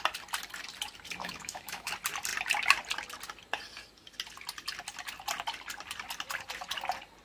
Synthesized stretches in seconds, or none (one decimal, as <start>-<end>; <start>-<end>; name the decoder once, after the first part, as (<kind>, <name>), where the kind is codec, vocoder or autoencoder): 1.2-1.9 (autoencoder, DAC-VAE)